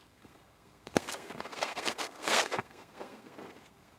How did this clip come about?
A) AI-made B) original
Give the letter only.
A